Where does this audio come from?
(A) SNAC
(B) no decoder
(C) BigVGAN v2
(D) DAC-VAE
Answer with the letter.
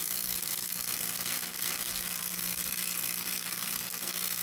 A